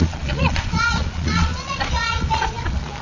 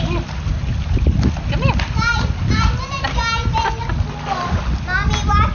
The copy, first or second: first